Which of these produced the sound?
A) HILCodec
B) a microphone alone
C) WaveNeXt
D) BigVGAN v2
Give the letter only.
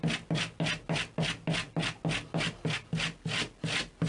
B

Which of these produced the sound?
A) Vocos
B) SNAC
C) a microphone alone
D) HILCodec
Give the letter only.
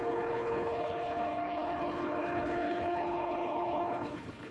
D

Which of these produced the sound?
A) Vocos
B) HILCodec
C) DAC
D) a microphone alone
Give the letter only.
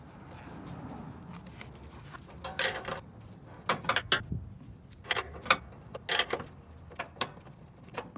D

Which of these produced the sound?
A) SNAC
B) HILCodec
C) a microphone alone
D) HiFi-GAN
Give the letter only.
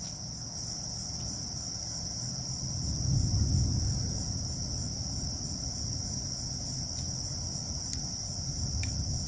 C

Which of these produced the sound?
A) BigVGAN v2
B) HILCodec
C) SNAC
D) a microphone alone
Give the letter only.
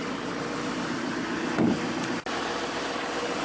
D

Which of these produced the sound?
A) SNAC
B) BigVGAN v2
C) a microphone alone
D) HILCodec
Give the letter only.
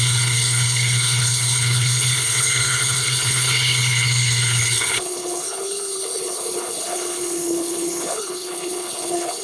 D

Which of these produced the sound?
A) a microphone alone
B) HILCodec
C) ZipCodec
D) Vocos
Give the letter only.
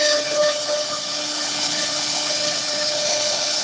B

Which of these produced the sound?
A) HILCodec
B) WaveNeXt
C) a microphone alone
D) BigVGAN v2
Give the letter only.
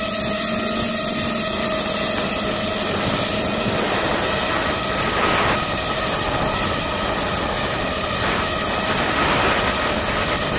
C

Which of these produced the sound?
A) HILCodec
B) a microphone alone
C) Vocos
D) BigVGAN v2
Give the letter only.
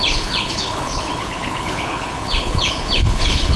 A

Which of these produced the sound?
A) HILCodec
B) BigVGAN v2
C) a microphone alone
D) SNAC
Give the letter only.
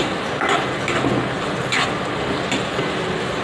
C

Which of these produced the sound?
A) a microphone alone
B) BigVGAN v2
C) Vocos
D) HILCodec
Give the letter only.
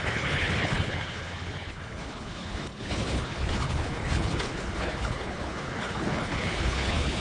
D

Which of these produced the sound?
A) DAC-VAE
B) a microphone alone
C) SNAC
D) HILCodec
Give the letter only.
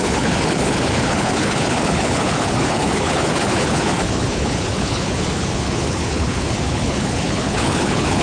D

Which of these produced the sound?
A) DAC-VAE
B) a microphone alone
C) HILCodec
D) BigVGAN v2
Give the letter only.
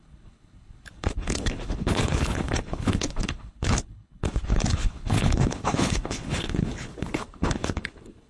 C